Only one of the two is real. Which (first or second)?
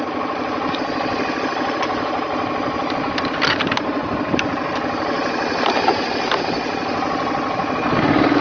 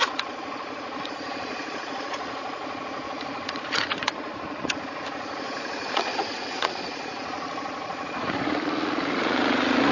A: first